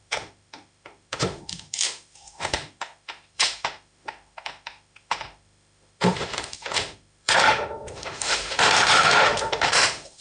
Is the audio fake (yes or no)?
yes